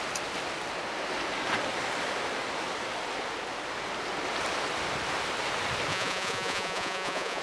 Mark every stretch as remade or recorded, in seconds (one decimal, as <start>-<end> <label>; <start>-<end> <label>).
0.0-5.9 recorded; 5.9-7.4 remade